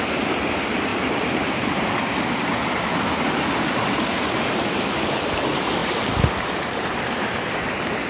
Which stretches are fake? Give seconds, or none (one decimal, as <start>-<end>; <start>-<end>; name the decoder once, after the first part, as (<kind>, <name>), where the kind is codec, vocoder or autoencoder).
5.8-6.8 (vocoder, BigVGAN v2)

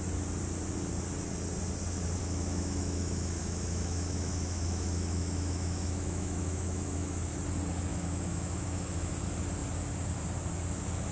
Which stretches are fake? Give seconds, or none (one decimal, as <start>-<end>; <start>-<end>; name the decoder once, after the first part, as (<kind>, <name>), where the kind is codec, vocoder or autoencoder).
2.2-7.3 (autoencoder, DAC-VAE); 7.9-9.1

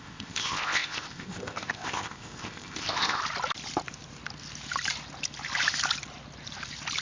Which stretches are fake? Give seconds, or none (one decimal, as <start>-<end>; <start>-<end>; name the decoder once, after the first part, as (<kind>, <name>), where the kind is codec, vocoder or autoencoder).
0.0-3.2 (codec, ZipCodec)

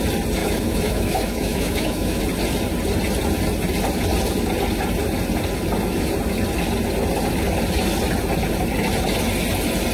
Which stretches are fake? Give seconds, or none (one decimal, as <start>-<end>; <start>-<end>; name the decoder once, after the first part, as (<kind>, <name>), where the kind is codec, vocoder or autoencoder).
0.4-2.2 (autoencoder, DAC-VAE)

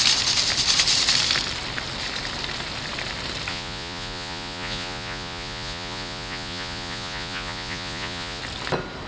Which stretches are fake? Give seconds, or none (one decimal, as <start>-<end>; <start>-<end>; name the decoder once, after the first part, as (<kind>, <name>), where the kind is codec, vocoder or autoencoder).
3.5-8.4 (vocoder, Vocos)